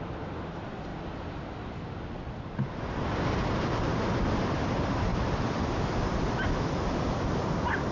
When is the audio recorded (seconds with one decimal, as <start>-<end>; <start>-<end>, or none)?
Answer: 0.0-7.9